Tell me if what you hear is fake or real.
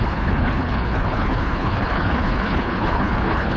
fake